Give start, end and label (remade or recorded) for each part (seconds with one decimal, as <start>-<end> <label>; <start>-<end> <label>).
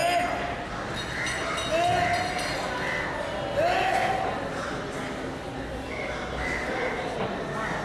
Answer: 0.0-7.8 recorded